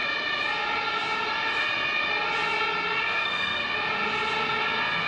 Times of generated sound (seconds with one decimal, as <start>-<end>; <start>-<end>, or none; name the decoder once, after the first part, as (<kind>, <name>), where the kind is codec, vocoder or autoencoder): 3.0-3.6 (codec, SNAC)